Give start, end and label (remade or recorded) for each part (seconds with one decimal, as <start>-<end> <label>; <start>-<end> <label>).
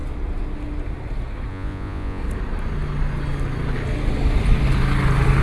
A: 0.0-1.5 recorded; 1.5-2.2 remade; 2.2-5.4 recorded